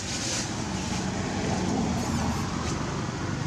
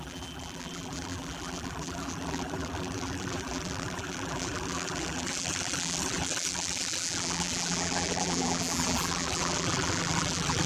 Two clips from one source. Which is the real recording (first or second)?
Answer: first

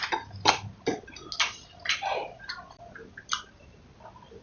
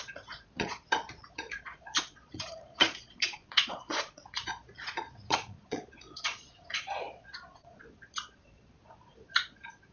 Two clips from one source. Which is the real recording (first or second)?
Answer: first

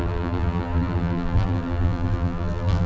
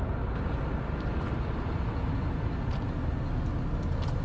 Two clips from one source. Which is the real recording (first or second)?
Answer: second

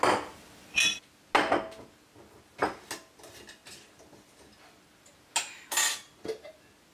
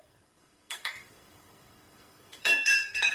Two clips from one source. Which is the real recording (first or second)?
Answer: first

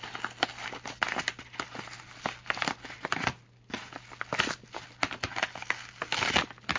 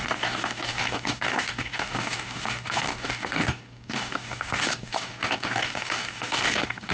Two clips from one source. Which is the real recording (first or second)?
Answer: first